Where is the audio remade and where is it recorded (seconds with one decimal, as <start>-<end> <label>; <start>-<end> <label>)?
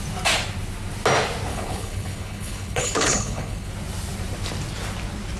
0.0-1.5 recorded; 1.5-3.7 remade; 3.7-5.4 recorded